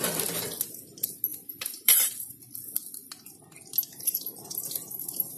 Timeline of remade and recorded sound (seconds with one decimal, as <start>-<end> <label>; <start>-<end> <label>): 0.0-1.3 recorded; 1.3-2.4 remade; 2.4-3.9 recorded; 3.9-5.4 remade

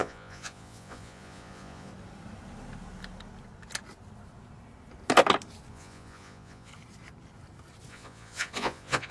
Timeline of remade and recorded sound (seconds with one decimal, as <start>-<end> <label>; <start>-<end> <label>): 0.0-1.9 remade; 1.9-5.7 recorded; 5.7-6.7 remade; 6.7-7.9 recorded; 7.9-9.1 remade

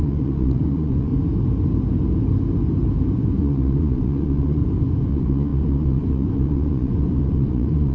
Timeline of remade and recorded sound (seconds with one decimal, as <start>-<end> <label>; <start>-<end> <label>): 0.0-1.1 remade; 1.1-3.4 recorded; 3.4-4.6 remade; 4.6-5.1 recorded; 5.1-7.9 remade

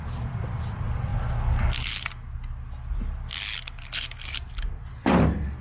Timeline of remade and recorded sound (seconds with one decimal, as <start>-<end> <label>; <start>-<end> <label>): 0.0-1.1 remade; 1.1-4.5 recorded; 4.5-5.6 remade

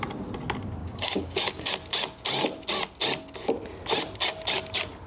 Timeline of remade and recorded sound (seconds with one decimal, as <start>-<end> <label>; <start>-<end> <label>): 0.0-0.8 recorded; 0.8-1.7 remade; 1.7-5.1 recorded

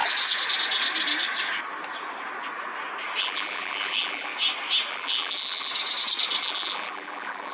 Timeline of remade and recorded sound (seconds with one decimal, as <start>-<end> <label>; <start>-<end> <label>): 0.0-3.2 recorded; 3.2-4.3 remade; 4.3-4.9 recorded; 4.9-5.7 remade; 5.7-6.4 recorded; 6.4-7.5 remade

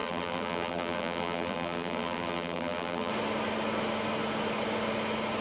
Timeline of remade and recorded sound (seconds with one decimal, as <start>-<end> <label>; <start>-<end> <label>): 0.0-3.1 remade; 3.1-5.4 recorded

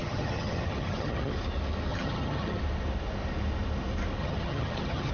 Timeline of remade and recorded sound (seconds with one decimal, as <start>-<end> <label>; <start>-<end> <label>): 0.0-1.3 remade; 1.3-1.9 recorded; 1.9-2.6 remade; 2.6-4.2 recorded; 4.2-5.1 remade